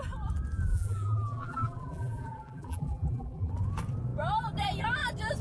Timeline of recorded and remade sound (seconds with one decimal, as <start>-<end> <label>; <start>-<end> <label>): 0.0-0.7 recorded; 0.7-3.5 remade; 3.5-5.4 recorded